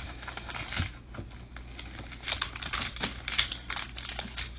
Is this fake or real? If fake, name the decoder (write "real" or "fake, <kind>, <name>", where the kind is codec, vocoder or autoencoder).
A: real